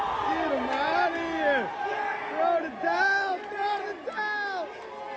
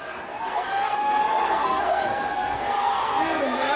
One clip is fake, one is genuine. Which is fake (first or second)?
second